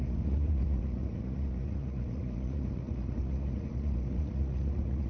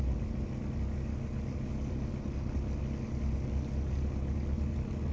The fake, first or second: first